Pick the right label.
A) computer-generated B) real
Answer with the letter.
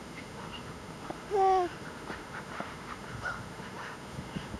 A